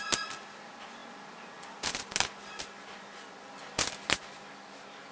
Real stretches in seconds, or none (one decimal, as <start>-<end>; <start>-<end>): 0.0-5.1